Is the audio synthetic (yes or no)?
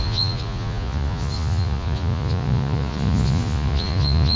yes